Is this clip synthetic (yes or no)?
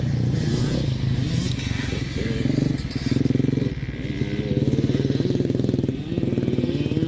no